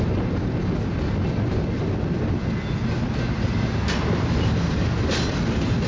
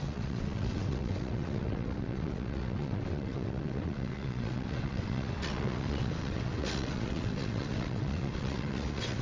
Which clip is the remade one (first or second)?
second